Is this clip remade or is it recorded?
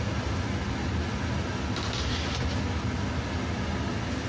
recorded